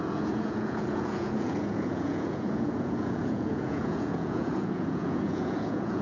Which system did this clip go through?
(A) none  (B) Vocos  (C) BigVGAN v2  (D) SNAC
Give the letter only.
B